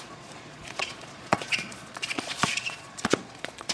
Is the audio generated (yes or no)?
yes